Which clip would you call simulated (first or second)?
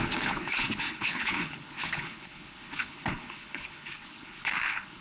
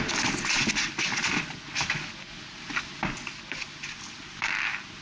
first